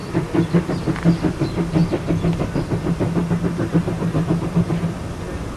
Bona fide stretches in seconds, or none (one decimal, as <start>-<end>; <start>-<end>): 0.0-5.6